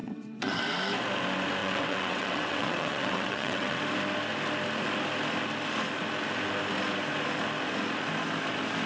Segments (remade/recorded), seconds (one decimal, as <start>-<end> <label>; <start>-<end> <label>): 0.0-0.6 remade; 0.6-1.6 recorded; 1.6-3.8 remade; 3.8-8.9 recorded